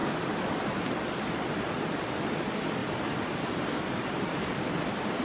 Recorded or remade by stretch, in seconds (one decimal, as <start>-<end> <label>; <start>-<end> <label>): 0.0-0.5 recorded; 0.5-5.2 remade